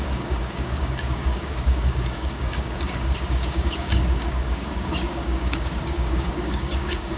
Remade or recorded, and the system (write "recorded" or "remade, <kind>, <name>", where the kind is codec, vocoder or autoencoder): remade, codec, DAC